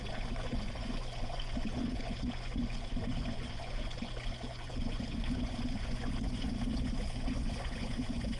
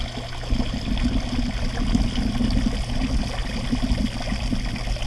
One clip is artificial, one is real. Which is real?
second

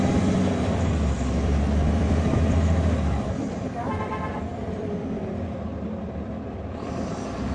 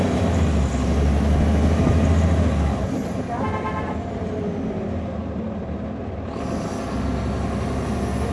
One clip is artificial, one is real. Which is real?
second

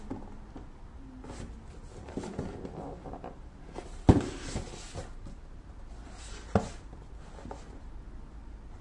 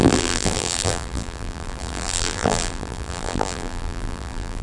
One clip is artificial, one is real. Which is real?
first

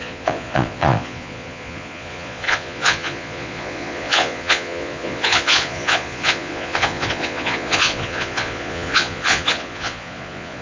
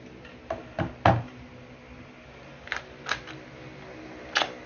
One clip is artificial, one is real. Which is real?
second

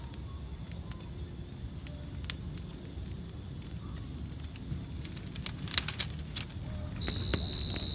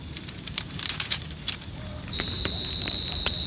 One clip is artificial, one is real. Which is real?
first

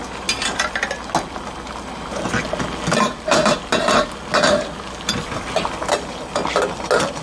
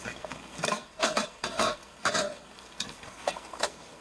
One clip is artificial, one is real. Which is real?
first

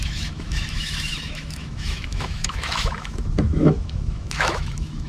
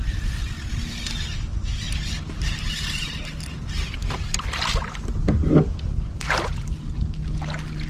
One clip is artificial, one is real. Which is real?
second